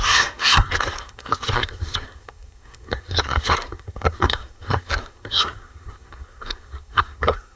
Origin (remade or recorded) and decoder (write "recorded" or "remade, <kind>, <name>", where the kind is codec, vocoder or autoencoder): remade, codec, SNAC